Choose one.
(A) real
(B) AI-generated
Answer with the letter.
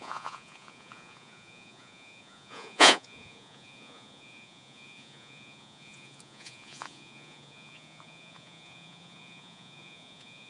B